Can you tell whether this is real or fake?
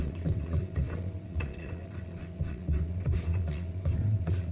fake